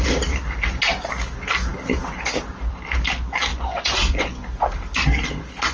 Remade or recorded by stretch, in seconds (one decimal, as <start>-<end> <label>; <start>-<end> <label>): 0.0-3.5 recorded; 3.5-4.4 remade; 4.4-5.7 recorded